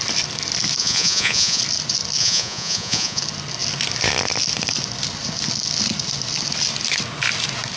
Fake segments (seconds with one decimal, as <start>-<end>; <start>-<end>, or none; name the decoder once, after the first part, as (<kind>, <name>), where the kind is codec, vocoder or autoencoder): 0.8-1.6 (vocoder, Vocos); 2.2-3.2